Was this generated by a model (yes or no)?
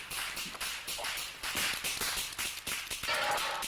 no